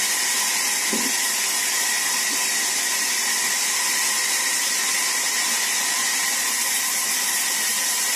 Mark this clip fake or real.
real